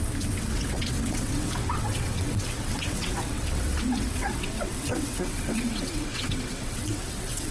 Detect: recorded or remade remade